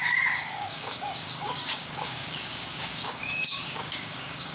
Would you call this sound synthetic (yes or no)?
yes